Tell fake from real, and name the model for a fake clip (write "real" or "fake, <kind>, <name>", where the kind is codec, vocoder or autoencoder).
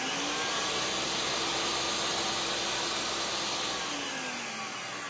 real